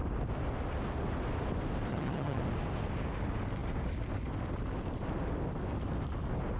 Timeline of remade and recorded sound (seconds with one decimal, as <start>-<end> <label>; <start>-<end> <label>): 0.0-1.9 recorded; 1.9-2.4 remade; 2.4-6.6 recorded